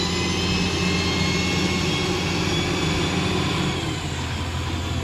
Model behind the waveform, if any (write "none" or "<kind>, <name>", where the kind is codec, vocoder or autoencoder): none